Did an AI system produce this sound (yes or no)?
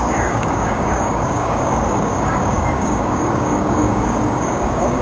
yes